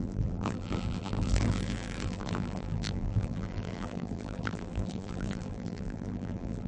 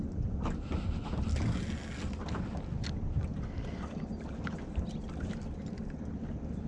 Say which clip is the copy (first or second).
first